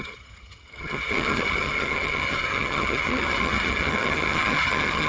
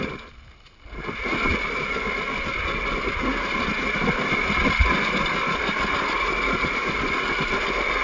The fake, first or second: first